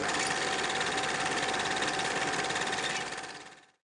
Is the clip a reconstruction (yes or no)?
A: no